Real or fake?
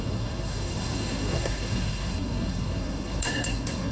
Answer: fake